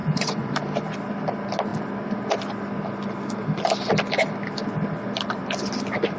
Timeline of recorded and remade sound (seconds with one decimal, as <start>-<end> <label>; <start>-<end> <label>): 0.0-0.5 remade; 0.5-6.2 recorded